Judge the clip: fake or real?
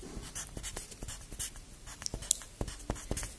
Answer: real